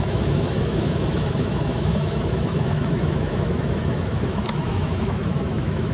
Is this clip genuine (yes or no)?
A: no